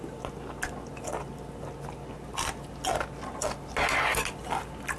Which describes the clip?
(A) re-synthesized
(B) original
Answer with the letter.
B